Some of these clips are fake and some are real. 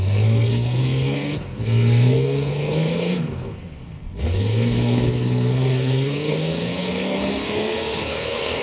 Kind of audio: fake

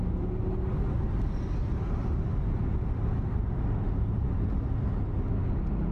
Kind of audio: real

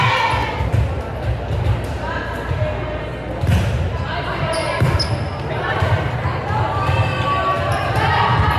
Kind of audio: real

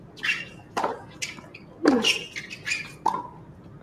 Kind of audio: real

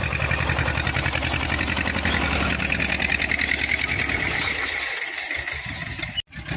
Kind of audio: real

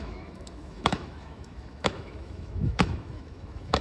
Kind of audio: fake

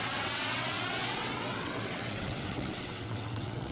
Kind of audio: fake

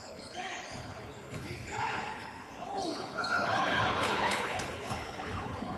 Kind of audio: fake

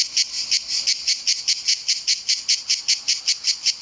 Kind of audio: real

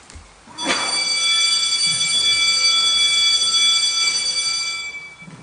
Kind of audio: real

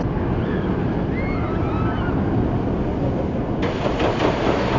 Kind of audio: real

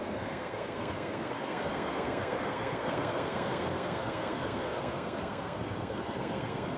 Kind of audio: fake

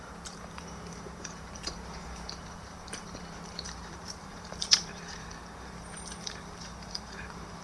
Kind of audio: fake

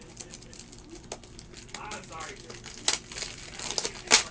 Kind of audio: real